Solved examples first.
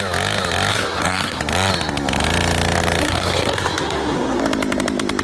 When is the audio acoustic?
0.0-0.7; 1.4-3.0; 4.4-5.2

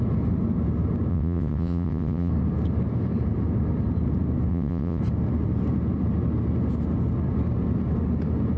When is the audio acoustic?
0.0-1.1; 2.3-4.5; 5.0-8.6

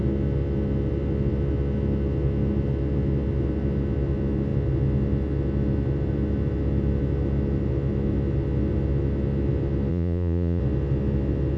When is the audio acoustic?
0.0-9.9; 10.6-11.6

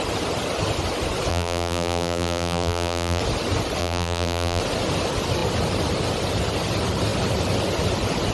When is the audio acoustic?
0.0-1.3; 3.2-3.8; 4.6-8.3